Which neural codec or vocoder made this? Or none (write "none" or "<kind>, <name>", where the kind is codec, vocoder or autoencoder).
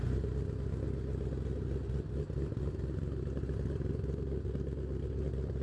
none